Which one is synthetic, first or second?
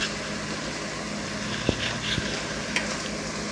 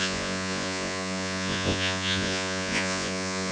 second